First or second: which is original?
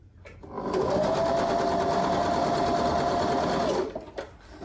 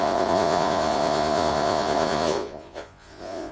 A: first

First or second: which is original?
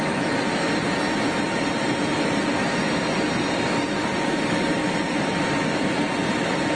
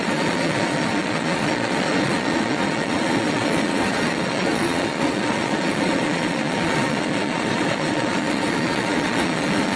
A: first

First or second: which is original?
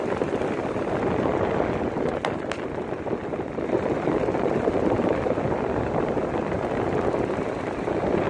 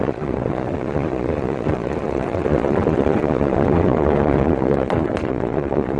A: first